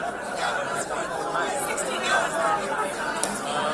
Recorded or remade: recorded